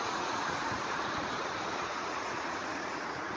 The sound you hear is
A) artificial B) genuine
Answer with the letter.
A